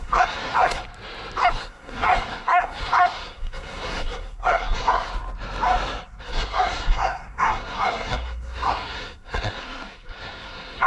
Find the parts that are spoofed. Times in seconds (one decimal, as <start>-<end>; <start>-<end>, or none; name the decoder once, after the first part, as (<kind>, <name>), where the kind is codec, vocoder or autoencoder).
0.0-0.8 (codec, SNAC); 1.5-5.1; 6.2-10.9